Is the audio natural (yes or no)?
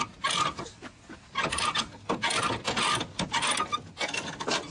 yes